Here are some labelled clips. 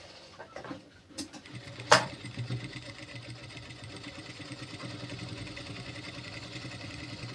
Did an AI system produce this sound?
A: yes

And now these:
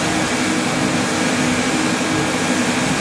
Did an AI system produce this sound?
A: no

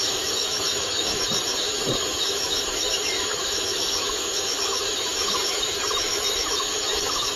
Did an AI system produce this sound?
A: yes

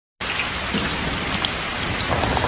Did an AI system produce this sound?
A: no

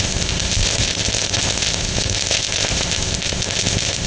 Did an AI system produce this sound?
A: yes